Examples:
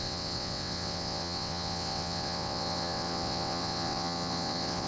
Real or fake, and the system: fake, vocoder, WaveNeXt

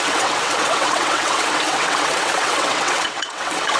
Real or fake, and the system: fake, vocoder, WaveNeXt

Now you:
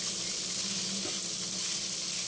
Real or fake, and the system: real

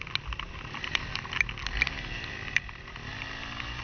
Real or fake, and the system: real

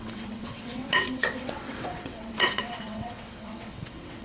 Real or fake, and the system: fake, vocoder, WaveNeXt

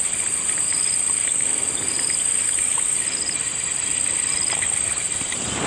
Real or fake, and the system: real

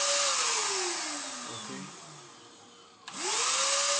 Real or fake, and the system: real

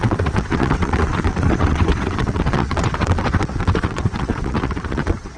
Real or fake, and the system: fake, vocoder, WaveNeXt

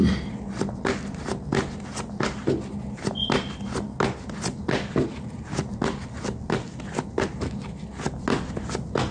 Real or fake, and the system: real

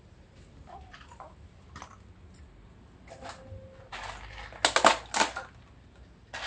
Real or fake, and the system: real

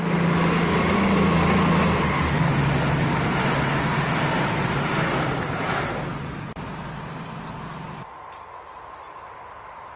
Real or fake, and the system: real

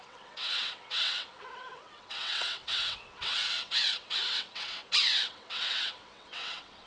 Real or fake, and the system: fake, vocoder, WaveNeXt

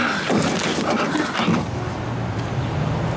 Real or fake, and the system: real